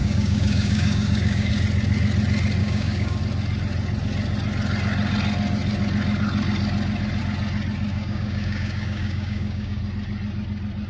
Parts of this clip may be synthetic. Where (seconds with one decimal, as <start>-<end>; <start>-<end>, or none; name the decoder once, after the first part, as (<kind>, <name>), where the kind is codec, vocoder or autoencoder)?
0.0-1.5 (codec, DAC); 2.6-3.2; 7.9-9.8